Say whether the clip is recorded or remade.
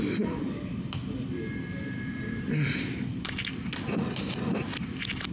recorded